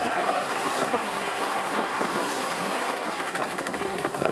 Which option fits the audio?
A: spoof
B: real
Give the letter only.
A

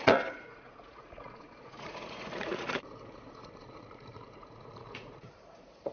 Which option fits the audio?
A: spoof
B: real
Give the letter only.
A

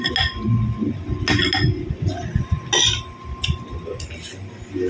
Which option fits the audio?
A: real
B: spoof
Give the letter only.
A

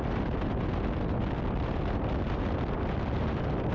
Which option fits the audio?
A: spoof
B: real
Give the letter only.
B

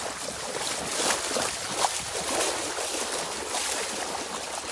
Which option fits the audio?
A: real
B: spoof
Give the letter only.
A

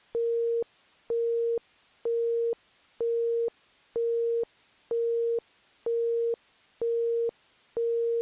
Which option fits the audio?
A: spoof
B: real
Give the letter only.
B